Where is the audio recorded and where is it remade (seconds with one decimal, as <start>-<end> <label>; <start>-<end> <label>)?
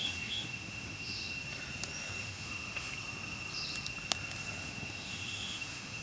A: 0.0-1.4 remade; 1.4-2.2 recorded; 2.2-2.9 remade; 2.9-4.6 recorded; 4.6-6.0 remade